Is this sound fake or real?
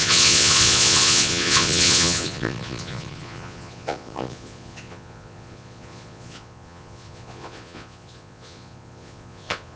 fake